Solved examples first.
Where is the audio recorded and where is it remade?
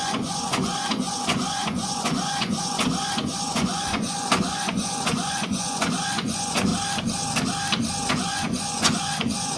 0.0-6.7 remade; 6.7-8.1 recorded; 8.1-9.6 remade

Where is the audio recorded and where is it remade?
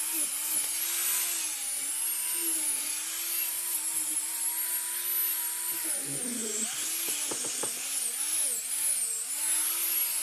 0.0-10.2 recorded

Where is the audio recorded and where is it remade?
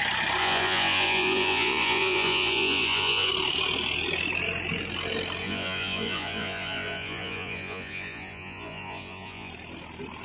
0.0-0.4 recorded; 0.4-3.3 remade; 3.3-5.4 recorded; 5.4-9.5 remade; 9.5-10.2 recorded